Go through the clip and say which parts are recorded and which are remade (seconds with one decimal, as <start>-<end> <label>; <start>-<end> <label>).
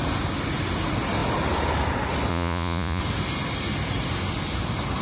0.0-2.3 recorded; 2.3-3.0 remade; 3.0-5.0 recorded